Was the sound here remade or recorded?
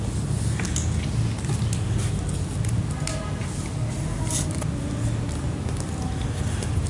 recorded